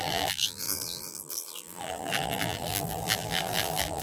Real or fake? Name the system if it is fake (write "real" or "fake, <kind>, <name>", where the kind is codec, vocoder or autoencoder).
fake, vocoder, BigVGAN v2